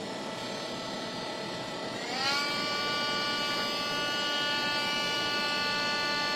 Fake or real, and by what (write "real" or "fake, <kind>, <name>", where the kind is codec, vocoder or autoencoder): real